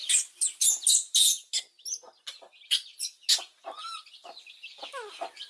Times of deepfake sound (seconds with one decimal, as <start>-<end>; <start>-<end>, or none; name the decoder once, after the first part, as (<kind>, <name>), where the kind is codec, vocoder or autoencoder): none